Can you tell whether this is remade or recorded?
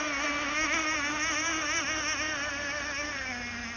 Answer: recorded